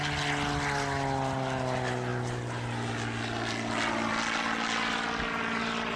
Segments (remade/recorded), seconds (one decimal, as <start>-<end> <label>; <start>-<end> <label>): 0.0-6.0 recorded